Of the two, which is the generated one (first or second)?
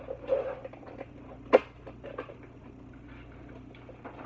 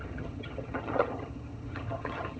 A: second